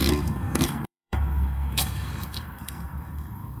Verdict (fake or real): fake